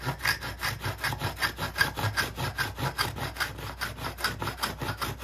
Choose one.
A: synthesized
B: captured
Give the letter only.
B